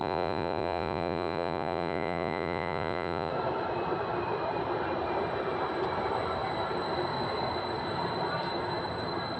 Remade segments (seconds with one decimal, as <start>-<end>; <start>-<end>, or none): 0.0-3.3